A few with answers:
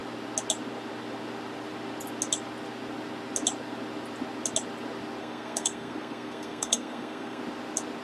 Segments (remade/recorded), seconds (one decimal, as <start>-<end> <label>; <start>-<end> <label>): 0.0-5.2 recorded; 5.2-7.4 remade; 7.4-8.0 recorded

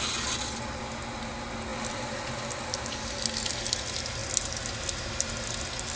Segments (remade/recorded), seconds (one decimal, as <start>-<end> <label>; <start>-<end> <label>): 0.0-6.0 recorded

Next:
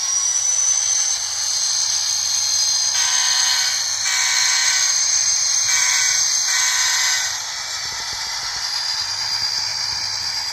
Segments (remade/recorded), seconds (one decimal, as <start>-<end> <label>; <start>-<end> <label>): 0.0-1.1 remade; 1.1-4.6 recorded; 4.6-8.6 remade; 8.6-10.5 recorded

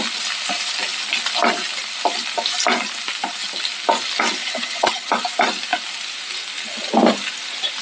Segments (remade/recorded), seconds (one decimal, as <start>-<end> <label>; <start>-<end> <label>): 0.0-4.4 recorded; 4.4-5.1 remade; 5.1-7.8 recorded

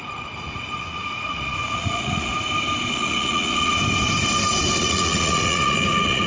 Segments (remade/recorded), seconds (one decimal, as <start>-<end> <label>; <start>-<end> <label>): 0.0-2.3 remade; 2.3-2.9 recorded; 2.9-3.7 remade; 3.7-4.8 recorded; 4.8-6.3 remade

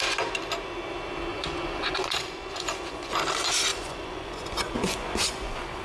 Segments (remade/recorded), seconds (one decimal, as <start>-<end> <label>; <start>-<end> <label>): 0.0-1.3 recorded; 1.3-3.1 remade; 3.1-3.7 recorded; 3.7-5.8 remade